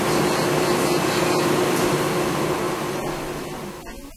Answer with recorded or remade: recorded